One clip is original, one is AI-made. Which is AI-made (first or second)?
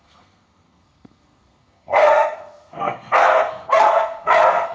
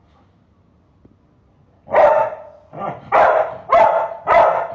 first